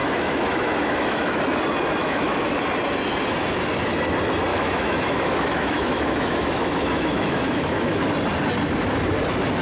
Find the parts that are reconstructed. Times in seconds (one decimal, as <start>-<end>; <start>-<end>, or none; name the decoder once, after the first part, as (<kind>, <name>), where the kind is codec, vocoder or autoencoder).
0.0-1.4 (autoencoder, DAC-VAE); 2.0-2.6; 4.5-8.1

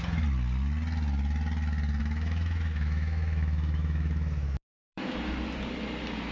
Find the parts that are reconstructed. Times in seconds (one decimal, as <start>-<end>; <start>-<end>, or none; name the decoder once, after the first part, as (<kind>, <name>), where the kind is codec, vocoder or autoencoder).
2.0-5.1 (autoencoder, DAC-VAE)

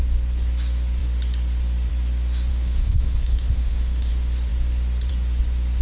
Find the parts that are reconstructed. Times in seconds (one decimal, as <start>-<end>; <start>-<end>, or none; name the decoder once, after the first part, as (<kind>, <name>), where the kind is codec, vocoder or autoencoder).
2.5-4.1 (autoencoder, DAC-VAE)